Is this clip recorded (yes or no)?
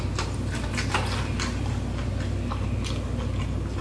yes